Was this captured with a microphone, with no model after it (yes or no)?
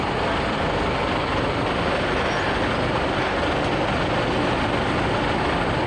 yes